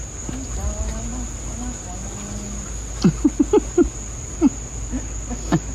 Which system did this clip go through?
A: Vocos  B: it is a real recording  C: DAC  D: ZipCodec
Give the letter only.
B